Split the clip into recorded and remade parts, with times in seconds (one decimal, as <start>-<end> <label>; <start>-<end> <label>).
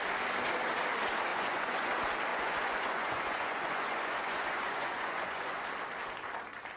0.0-1.3 recorded; 1.3-1.9 remade; 1.9-2.3 recorded; 2.3-5.6 remade; 5.6-6.8 recorded